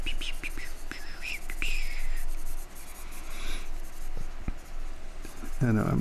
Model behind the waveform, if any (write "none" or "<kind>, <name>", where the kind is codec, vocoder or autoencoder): none